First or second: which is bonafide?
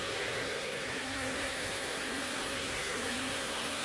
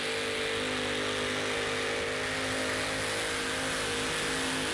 second